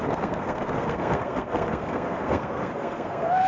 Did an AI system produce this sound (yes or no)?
yes